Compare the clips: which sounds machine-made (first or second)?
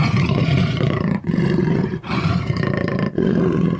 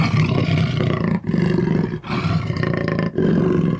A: first